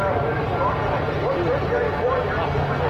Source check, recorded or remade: recorded